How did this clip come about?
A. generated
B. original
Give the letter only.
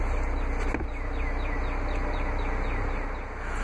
B